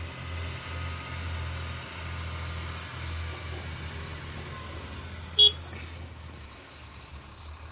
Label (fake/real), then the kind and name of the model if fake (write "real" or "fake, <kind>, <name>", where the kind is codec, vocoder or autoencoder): real